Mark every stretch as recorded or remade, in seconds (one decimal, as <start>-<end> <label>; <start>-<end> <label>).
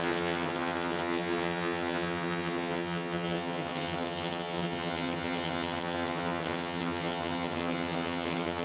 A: 0.0-8.6 remade